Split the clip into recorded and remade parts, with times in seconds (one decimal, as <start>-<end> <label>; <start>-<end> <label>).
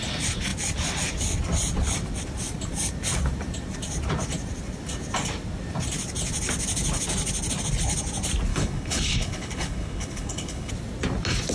0.0-8.5 recorded; 8.5-10.7 remade; 10.7-11.5 recorded